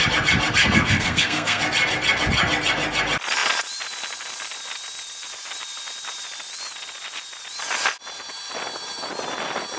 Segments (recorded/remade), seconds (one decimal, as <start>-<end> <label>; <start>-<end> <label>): 0.0-0.6 recorded; 0.6-1.6 remade; 1.6-9.8 recorded